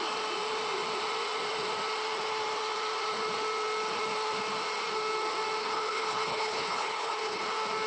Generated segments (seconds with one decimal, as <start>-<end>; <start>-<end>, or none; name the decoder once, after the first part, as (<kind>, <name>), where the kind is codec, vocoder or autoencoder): 5.6-7.4 (codec, HILCodec)